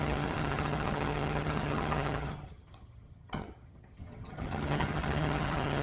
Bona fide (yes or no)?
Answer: no